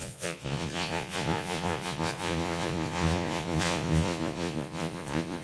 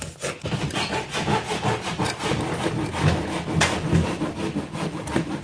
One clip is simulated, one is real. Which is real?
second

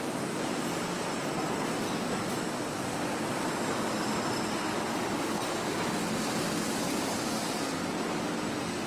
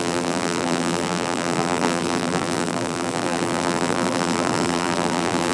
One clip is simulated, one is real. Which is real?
first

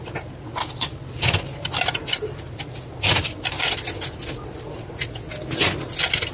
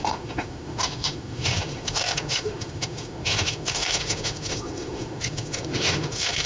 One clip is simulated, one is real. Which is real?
first